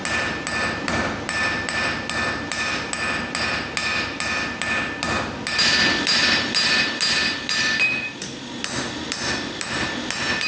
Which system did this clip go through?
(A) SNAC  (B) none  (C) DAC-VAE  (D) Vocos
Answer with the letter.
B